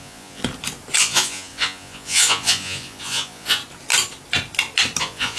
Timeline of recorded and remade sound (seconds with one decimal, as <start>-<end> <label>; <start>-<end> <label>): 0.0-0.4 remade; 0.4-1.0 recorded; 1.0-3.6 remade; 3.6-5.0 recorded; 5.0-5.4 remade